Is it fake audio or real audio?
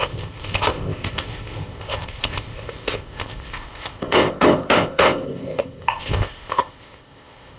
fake